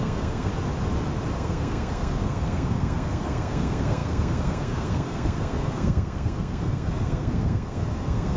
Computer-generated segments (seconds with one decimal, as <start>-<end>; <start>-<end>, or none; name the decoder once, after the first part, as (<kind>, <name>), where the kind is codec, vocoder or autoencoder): 0.0-0.5 (codec, SNAC); 1.3-8.4